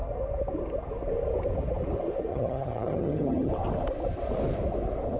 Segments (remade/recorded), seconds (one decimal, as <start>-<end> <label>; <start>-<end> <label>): 0.0-2.3 recorded; 2.3-3.5 remade; 3.5-5.2 recorded